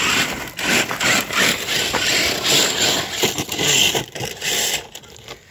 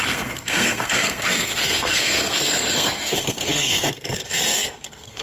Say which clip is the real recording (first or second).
first